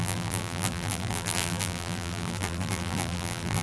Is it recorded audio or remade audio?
remade